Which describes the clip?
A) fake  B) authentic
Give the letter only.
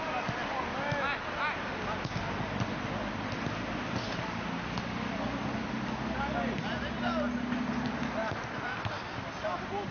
B